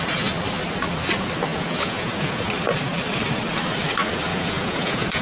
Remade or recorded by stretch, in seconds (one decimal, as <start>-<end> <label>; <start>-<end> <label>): 0.0-1.5 recorded; 1.5-2.5 remade; 2.5-4.3 recorded; 4.3-5.2 remade